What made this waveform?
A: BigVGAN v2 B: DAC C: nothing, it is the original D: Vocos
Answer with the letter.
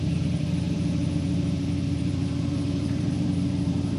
A